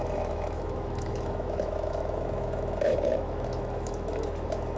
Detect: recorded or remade remade